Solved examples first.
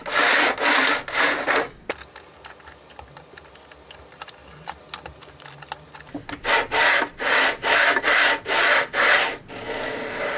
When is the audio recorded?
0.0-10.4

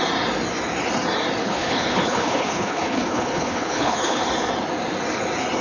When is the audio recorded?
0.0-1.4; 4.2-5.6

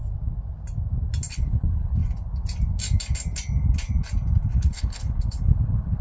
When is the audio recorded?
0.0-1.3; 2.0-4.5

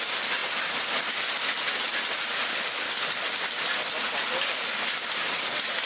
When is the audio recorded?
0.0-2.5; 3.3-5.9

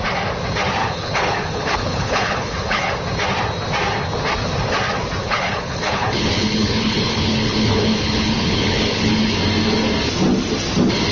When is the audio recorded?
0.0-0.8; 2.9-5.2; 9.4-11.1

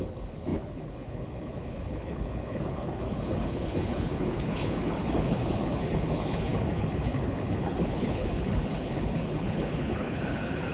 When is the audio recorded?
none

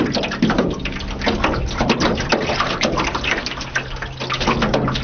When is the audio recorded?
0.0-5.0

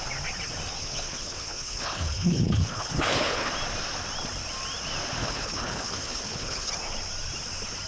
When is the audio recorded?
0.0-0.8; 3.5-5.2; 6.7-7.9